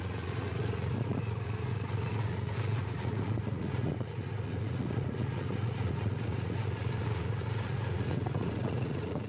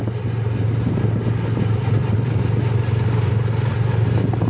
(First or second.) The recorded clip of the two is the second